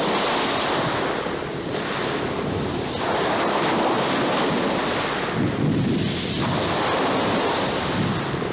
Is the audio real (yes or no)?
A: yes